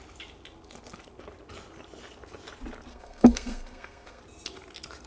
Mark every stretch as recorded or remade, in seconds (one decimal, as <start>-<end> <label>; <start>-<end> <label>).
0.0-2.9 recorded; 2.9-4.2 remade; 4.2-5.1 recorded